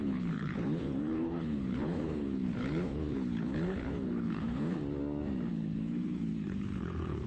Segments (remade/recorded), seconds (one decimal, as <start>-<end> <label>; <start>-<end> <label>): 0.0-4.8 remade; 4.8-5.5 recorded; 5.5-7.3 remade